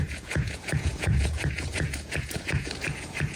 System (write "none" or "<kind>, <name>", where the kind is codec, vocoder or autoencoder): vocoder, Vocos